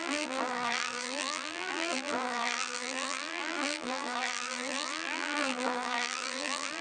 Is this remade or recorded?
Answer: remade